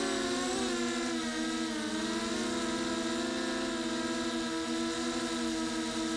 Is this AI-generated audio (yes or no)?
no